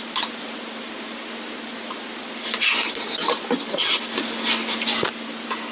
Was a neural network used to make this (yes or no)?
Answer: no